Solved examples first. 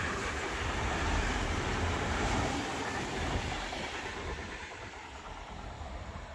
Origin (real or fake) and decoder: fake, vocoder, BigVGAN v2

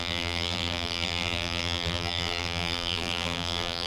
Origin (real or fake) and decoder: fake, vocoder, BigVGAN v2